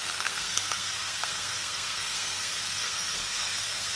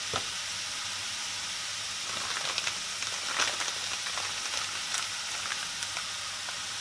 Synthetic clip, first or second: first